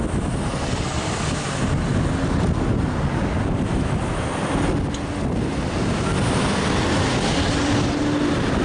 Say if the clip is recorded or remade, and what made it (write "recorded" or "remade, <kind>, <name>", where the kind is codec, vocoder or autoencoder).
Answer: recorded